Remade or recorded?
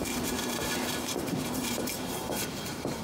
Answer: remade